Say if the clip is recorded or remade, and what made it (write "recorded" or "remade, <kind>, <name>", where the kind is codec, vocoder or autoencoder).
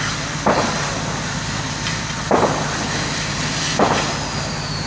recorded